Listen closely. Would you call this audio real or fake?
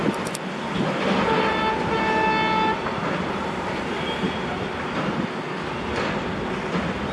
real